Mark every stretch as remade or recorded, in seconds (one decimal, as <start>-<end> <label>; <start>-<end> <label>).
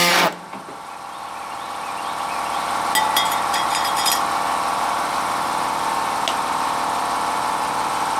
0.0-8.2 recorded